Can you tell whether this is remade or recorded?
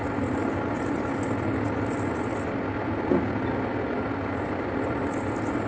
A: recorded